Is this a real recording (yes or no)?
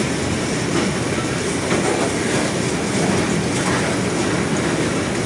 yes